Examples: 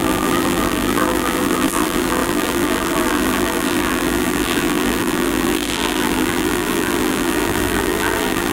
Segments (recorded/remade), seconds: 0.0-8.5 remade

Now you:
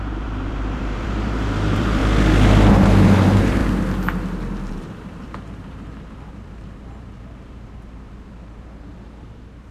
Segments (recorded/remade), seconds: 0.0-2.0 remade; 2.0-2.7 recorded; 2.7-3.6 remade; 3.6-4.7 recorded; 4.7-9.7 remade

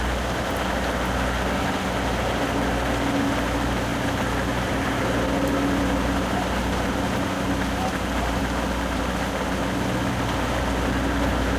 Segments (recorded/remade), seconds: 0.0-3.9 recorded; 3.9-7.7 remade; 7.7-8.4 recorded; 8.4-9.0 remade; 9.0-11.6 recorded

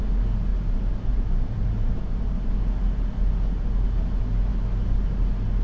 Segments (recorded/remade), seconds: 0.0-0.5 recorded; 0.5-2.5 remade; 2.5-5.6 recorded

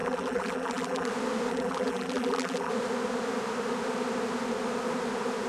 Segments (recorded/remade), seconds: 0.0-1.1 remade; 1.1-1.5 recorded; 1.5-2.7 remade; 2.7-5.5 recorded

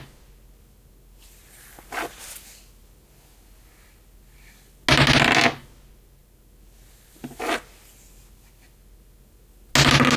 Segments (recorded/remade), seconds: 0.0-10.2 recorded